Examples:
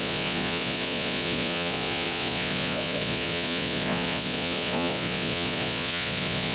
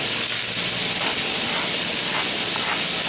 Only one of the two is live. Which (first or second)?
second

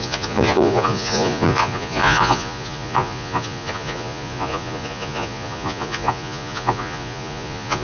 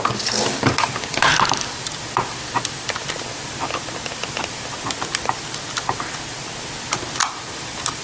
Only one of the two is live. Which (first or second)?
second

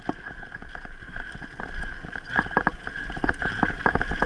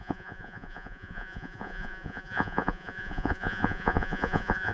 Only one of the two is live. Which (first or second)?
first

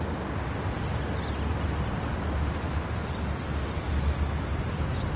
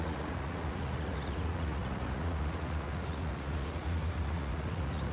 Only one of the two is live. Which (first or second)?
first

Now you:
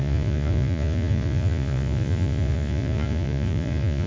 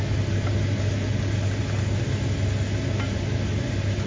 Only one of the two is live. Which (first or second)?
second